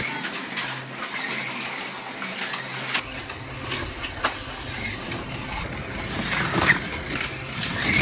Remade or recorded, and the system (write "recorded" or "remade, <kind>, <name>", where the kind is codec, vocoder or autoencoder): recorded